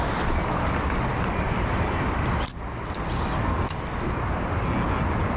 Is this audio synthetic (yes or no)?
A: no